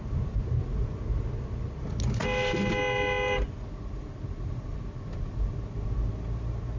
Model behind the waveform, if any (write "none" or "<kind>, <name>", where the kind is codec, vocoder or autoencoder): none